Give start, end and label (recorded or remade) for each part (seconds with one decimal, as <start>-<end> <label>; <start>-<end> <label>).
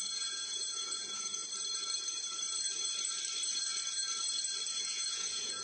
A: 0.0-1.4 remade; 1.4-4.8 recorded; 4.8-5.6 remade